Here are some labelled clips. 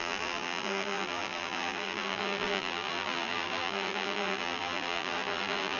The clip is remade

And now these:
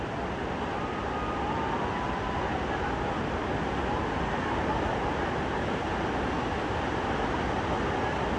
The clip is recorded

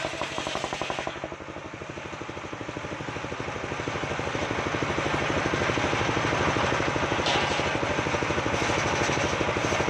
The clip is recorded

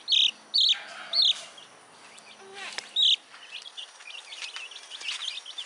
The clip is recorded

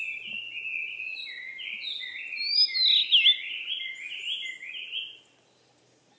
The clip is recorded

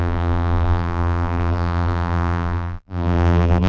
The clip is remade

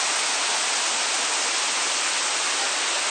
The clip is recorded